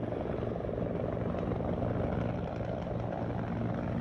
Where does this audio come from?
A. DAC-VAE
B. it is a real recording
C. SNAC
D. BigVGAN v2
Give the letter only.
B